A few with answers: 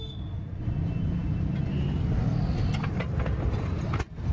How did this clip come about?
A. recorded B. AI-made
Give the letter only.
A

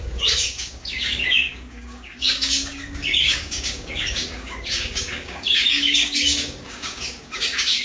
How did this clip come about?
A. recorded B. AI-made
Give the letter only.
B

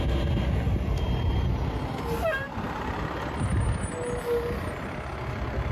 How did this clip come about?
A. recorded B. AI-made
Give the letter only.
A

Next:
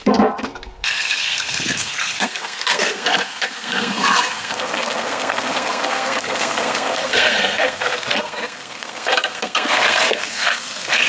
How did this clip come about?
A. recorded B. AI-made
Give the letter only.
B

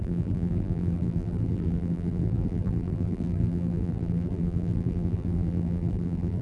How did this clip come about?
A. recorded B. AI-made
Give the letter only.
B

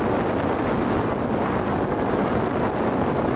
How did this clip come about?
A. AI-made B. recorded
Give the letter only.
B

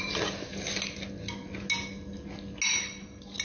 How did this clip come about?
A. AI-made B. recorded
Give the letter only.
B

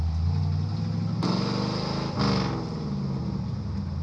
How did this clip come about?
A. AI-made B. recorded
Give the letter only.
B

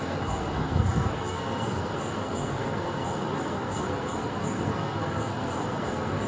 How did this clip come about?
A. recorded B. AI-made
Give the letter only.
B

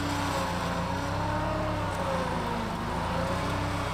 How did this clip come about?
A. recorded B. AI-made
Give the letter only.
A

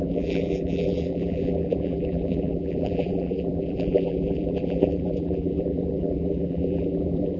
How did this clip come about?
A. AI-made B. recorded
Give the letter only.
A